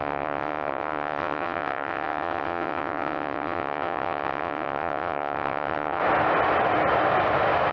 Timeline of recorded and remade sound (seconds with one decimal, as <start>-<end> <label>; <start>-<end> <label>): 0.0-6.0 remade; 6.0-7.7 recorded

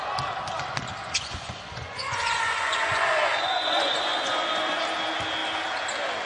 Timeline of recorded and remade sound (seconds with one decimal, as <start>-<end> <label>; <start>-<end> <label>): 0.0-1.0 recorded; 1.0-4.8 remade; 4.8-6.3 recorded